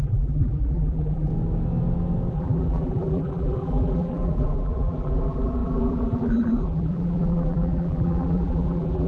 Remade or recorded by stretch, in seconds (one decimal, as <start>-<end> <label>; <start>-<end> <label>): 0.0-1.3 remade; 1.3-2.3 recorded; 2.3-9.1 remade